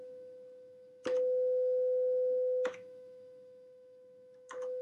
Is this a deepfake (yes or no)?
yes